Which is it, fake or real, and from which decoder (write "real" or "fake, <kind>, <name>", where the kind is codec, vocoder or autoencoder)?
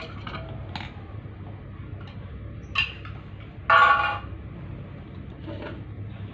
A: real